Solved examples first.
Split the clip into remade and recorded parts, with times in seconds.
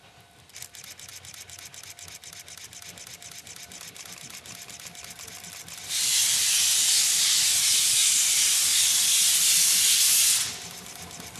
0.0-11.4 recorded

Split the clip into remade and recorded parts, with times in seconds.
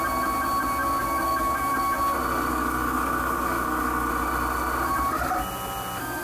0.0-0.8 recorded; 0.8-2.0 remade; 2.0-2.5 recorded; 2.5-4.1 remade; 4.1-6.2 recorded